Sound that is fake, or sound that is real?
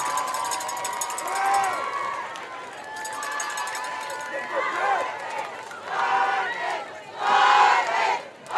real